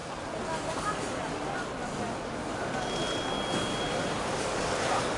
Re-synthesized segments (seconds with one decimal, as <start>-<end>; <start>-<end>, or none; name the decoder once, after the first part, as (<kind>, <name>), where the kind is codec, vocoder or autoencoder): none